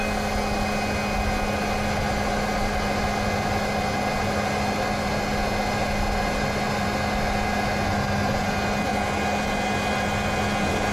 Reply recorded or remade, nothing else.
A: recorded